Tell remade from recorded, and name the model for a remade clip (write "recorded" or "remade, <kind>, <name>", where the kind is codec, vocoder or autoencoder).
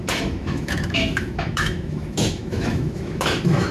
remade, autoencoder, DAC-VAE